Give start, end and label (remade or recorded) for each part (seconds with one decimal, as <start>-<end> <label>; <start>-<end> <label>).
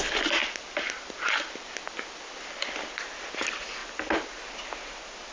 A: 0.0-5.3 recorded